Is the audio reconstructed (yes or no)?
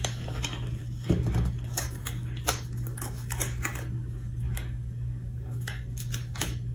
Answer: yes